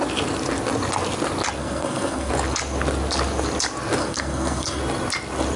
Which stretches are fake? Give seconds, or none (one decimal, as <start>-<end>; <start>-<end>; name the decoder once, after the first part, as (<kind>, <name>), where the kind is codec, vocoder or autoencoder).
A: 1.6-2.3 (codec, SNAC); 4.0-4.8